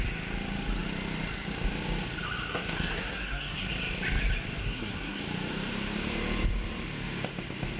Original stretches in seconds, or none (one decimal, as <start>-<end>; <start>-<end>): 0.0-2.5; 3.7-4.6; 5.2-7.8